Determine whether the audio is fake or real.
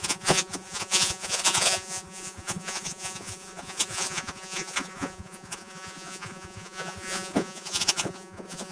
fake